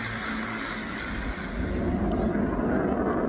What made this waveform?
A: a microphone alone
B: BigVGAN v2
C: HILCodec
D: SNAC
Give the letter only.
A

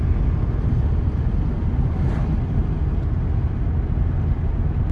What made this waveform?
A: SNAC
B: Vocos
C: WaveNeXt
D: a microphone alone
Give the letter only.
D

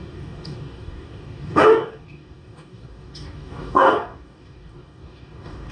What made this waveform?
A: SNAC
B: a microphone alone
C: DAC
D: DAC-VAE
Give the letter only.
C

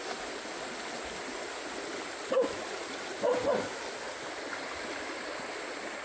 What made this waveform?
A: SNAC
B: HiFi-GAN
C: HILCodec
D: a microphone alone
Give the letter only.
D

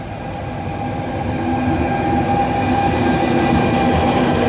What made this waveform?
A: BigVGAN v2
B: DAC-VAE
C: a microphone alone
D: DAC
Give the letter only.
C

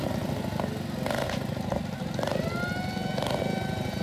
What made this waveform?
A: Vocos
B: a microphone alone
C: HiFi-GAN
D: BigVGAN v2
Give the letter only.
B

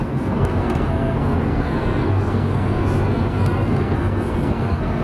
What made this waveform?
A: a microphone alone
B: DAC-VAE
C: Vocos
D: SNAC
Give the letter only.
D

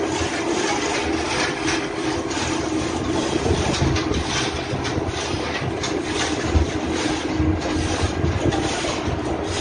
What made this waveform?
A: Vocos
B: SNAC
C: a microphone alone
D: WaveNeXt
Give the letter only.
C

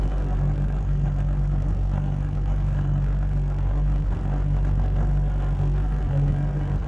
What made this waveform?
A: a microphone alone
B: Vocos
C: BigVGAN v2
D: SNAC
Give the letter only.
D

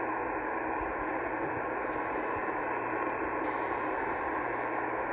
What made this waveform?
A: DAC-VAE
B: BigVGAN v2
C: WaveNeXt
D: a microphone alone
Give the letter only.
D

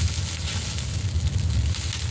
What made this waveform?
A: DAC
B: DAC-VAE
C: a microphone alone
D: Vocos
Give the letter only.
C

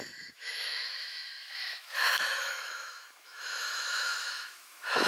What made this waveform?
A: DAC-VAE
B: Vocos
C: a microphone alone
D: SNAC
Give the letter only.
A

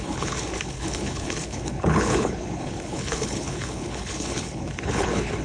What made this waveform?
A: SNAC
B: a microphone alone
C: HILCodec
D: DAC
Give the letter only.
C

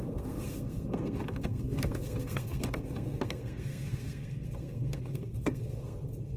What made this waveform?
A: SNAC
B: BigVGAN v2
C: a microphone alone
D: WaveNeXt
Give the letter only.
A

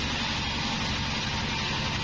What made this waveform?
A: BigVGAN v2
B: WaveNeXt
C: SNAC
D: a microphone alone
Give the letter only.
D